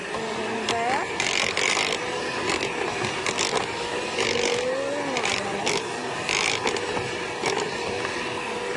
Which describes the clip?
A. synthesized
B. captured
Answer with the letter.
B